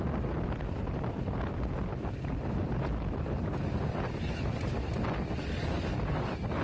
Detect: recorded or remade recorded